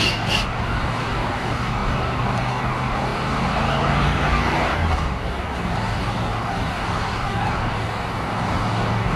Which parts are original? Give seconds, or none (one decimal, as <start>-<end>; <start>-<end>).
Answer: none